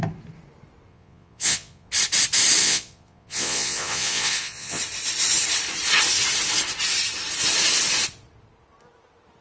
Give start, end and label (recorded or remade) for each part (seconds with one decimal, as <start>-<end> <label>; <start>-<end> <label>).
0.0-0.9 recorded; 0.9-1.9 remade; 1.9-2.6 recorded; 2.6-4.8 remade; 4.8-9.4 recorded